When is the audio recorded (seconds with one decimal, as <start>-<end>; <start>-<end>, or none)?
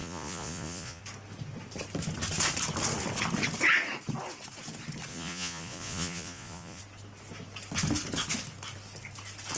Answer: 1.0-5.1; 6.8-9.6